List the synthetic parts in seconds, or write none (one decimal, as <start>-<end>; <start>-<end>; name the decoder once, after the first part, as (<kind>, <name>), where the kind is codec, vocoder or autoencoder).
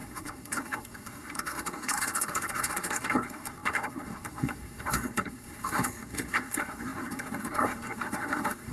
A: 0.0-8.7 (codec, SNAC)